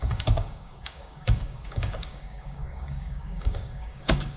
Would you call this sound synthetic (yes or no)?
yes